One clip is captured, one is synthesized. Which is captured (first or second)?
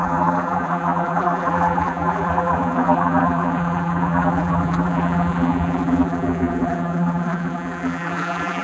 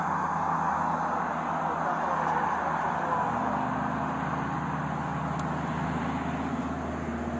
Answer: second